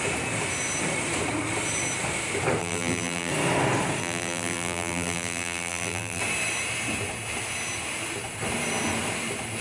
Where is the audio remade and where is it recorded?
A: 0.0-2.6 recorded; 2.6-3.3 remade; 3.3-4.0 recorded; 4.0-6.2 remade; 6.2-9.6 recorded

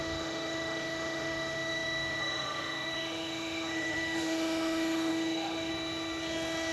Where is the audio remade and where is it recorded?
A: 0.0-5.7 remade; 5.7-6.7 recorded

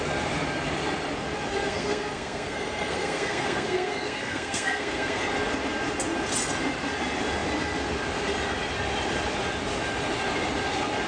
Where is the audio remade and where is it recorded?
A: 0.0-1.5 recorded; 1.5-5.2 remade; 5.2-11.1 recorded

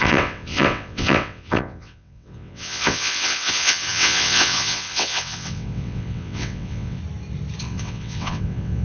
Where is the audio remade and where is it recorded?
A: 0.0-7.0 remade; 7.0-7.6 recorded; 7.6-8.8 remade

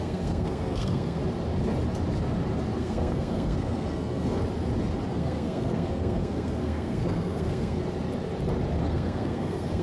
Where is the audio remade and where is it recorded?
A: 0.0-1.2 remade; 1.2-2.8 recorded; 2.8-4.4 remade; 4.4-5.1 recorded; 5.1-7.8 remade; 7.8-8.8 recorded; 8.8-9.8 remade